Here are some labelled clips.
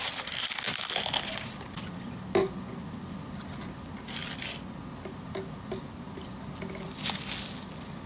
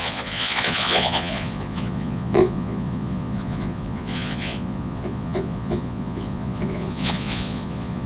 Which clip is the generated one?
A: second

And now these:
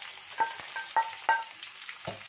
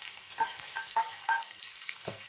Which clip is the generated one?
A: second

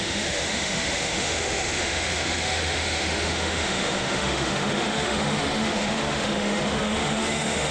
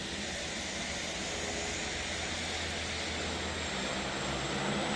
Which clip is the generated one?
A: first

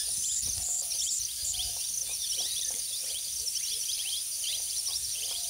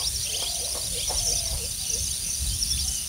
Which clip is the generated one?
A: first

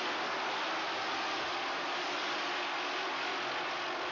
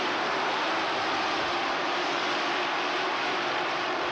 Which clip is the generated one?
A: second